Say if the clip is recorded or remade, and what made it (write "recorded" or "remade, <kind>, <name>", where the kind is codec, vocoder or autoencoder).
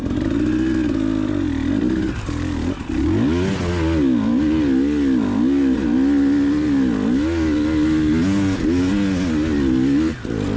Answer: recorded